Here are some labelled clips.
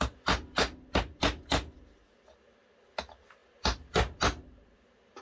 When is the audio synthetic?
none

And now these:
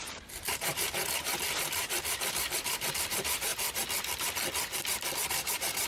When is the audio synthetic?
0.0-3.5 (vocoder, BigVGAN v2); 5.3-5.9

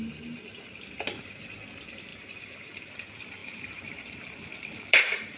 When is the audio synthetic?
2.1-2.9 (vocoder, BigVGAN v2); 3.4-5.4

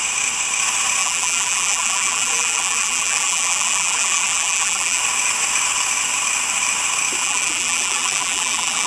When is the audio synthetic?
1.0-5.0 (vocoder, BigVGAN v2); 7.2-8.9